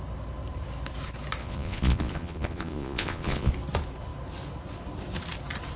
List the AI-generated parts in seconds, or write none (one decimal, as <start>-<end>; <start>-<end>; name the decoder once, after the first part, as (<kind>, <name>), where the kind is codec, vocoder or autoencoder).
1.4-3.5 (vocoder, Vocos)